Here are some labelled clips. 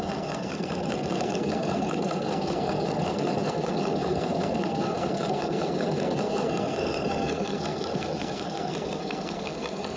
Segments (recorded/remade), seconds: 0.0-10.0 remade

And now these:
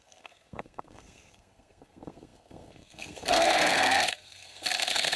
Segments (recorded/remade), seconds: 0.0-5.2 remade

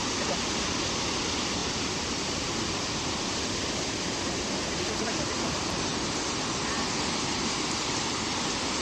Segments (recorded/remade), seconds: 0.0-8.8 recorded

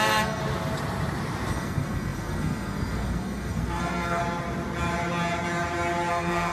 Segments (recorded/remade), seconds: 0.0-0.4 remade; 0.4-1.5 recorded; 1.5-4.2 remade; 4.2-6.1 recorded; 6.1-6.5 remade

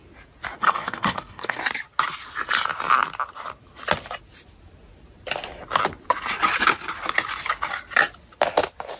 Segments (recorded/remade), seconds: 0.0-0.6 recorded; 0.6-1.6 remade; 1.6-9.0 recorded

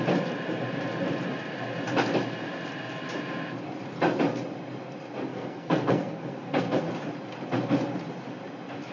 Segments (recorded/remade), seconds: 0.0-5.3 recorded; 5.3-6.9 remade; 6.9-8.9 recorded